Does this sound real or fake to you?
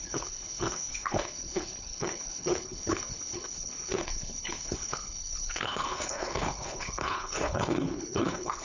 fake